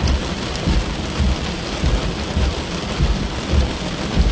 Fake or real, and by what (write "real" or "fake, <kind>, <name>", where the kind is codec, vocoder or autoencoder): real